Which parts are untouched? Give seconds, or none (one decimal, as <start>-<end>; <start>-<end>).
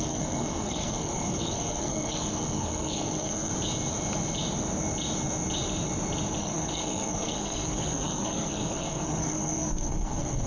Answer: 3.5-6.4